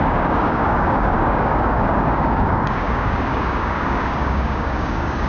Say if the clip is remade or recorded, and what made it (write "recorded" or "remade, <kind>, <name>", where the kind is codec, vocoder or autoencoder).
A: remade, codec, DAC